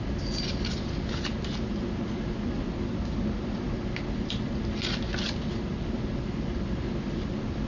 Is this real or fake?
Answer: real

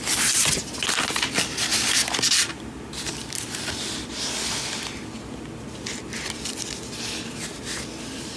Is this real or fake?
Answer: real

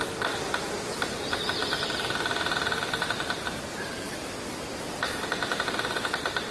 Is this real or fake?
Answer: real